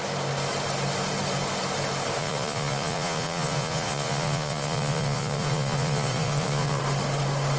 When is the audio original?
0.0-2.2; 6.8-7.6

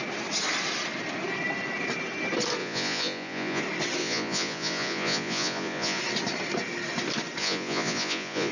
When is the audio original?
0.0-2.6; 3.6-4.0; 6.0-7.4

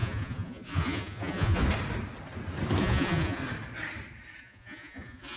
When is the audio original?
1.6-2.8; 3.4-4.4